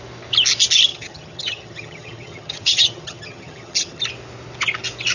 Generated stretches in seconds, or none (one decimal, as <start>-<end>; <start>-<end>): 0.9-4.0

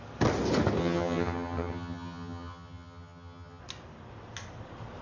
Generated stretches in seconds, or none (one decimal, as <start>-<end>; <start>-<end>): 0.8-3.6

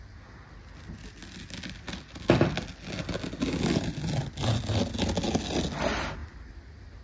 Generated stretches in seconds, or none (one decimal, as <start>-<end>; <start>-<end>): none

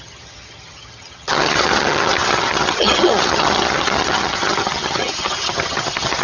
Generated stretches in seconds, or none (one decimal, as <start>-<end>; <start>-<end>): 0.0-6.2

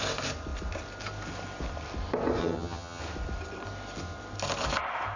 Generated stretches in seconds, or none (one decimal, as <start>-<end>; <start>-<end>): 2.4-3.0

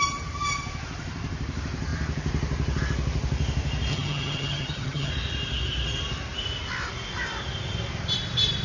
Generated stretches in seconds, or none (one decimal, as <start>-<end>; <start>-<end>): 3.9-5.1